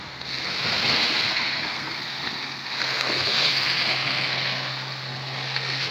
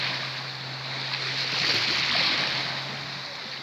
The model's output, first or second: first